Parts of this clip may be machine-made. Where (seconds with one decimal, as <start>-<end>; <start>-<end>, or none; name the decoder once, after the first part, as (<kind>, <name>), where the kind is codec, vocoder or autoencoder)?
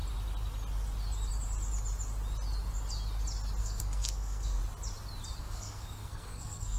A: 3.6-4.6 (codec, SNAC); 5.4-6.8